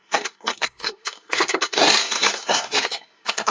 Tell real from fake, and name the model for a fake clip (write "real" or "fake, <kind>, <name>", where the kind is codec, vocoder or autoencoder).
fake, codec, SNAC